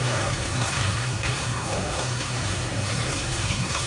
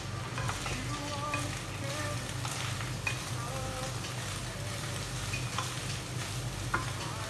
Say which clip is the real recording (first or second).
second